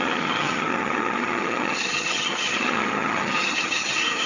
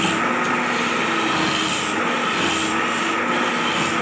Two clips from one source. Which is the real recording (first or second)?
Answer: second